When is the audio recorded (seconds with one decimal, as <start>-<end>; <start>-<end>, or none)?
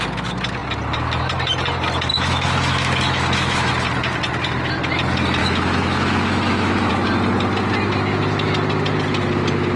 0.0-2.1; 3.7-5.4; 6.9-9.8